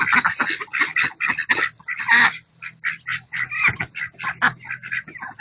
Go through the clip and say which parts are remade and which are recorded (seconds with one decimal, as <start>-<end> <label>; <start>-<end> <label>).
0.0-5.4 recorded